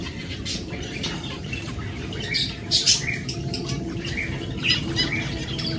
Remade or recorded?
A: remade